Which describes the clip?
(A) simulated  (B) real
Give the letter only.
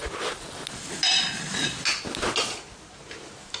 B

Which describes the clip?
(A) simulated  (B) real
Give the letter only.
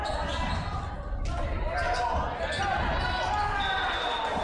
B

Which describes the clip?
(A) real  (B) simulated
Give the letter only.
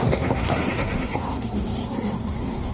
B